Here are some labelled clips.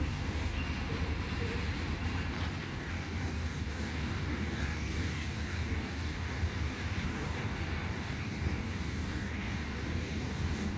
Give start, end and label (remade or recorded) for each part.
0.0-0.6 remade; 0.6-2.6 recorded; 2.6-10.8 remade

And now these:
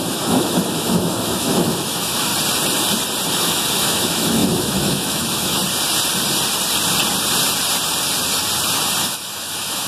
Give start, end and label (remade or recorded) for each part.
0.0-2.3 remade; 2.3-3.3 recorded; 3.3-5.6 remade; 5.6-9.0 recorded; 9.0-9.9 remade

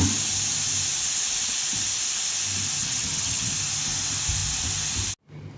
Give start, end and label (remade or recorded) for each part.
0.0-2.8 recorded; 2.8-3.5 remade; 3.5-5.6 recorded

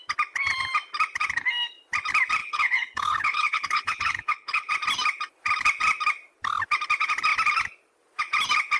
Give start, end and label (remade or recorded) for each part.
0.0-2.4 recorded; 2.4-4.7 remade; 4.7-8.8 recorded

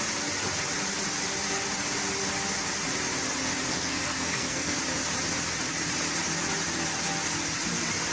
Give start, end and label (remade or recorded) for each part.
0.0-3.7 recorded; 3.7-4.8 remade; 4.8-8.1 recorded

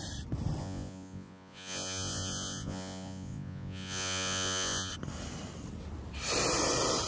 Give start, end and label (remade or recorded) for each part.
0.0-0.6 recorded; 0.6-4.9 remade; 4.9-7.1 recorded

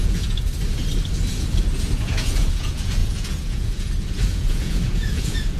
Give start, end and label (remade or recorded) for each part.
0.0-0.5 remade; 0.5-1.3 recorded; 1.3-5.6 remade

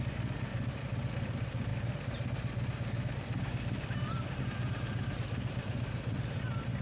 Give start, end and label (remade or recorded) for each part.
0.0-6.8 recorded